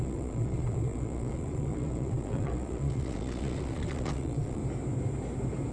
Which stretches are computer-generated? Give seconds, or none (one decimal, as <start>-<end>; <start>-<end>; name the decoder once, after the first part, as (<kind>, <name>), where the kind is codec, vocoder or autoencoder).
0.0-4.6 (vocoder, Vocos)

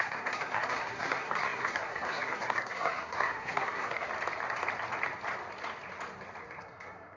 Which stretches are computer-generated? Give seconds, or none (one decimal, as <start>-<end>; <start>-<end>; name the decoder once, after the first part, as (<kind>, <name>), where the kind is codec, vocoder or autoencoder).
0.0-4.1 (codec, SNAC); 6.6-7.2

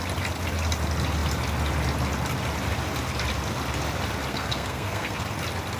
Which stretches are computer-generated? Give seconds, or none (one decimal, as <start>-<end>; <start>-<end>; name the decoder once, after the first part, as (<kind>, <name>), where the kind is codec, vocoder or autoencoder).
4.3-5.2 (codec, SNAC)